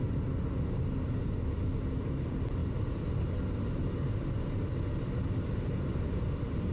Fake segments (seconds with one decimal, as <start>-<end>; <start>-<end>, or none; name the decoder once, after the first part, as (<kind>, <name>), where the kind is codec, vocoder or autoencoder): none